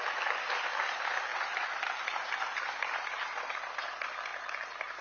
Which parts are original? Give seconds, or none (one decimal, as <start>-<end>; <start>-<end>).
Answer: 0.0-1.3; 3.9-4.3